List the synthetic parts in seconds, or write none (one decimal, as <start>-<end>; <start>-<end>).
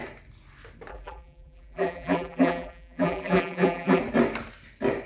0.9-4.0